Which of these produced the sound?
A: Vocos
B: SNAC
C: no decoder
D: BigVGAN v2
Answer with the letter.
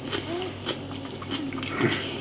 C